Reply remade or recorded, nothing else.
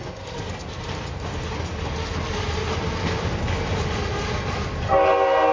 recorded